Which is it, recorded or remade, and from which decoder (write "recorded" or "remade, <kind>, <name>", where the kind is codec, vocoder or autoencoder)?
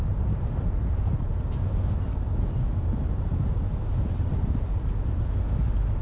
remade, vocoder, BigVGAN v2